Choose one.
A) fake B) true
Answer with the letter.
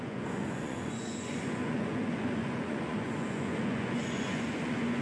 A